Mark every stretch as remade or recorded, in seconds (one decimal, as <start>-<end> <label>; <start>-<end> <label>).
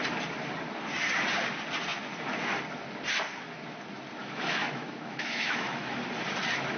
0.0-4.2 recorded; 4.2-6.0 remade; 6.0-6.8 recorded